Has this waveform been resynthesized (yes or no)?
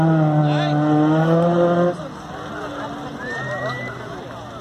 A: no